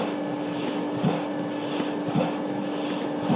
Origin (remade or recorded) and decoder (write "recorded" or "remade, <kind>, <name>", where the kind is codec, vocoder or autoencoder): recorded